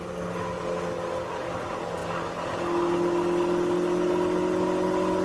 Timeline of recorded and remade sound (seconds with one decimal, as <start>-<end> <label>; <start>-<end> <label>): 0.0-5.2 recorded